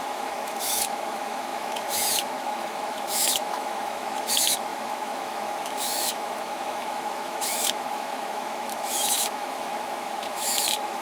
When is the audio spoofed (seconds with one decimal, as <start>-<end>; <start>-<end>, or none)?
0.0-11.0